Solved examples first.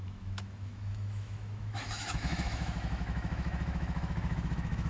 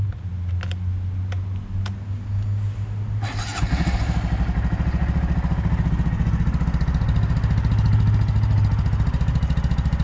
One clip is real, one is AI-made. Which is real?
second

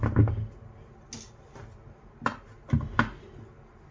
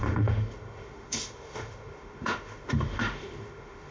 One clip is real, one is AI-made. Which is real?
first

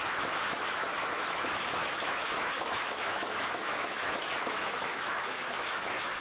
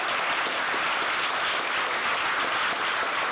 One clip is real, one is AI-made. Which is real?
second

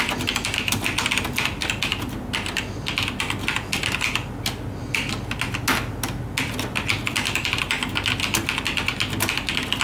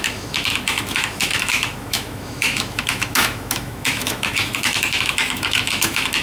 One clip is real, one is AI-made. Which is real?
first